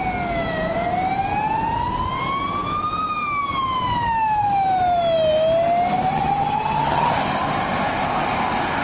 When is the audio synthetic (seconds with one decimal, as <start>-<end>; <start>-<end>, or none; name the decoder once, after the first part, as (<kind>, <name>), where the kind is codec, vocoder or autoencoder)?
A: 6.1-7.2 (vocoder, HiFi-GAN)